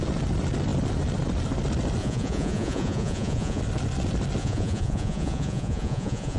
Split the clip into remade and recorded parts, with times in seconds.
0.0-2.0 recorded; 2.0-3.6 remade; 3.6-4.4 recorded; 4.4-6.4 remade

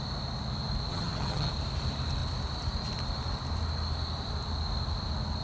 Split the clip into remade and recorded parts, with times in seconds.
0.0-0.9 recorded; 0.9-1.5 remade; 1.5-5.4 recorded

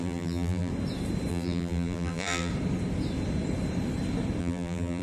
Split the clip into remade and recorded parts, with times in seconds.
0.0-0.7 remade; 0.7-1.3 recorded; 1.3-2.5 remade; 2.5-4.4 recorded; 4.4-5.0 remade